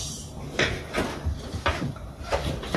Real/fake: fake